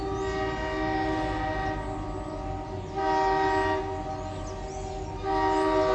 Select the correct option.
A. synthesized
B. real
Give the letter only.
B